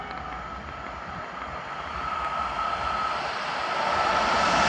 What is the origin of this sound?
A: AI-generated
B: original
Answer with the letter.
B